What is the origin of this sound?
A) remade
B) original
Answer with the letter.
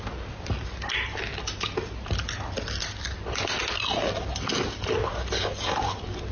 B